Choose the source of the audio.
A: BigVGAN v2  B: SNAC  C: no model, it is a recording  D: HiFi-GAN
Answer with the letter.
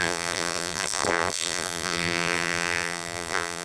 A